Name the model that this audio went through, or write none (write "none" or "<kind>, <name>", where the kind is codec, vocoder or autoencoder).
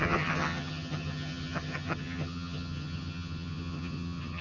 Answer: vocoder, HiFi-GAN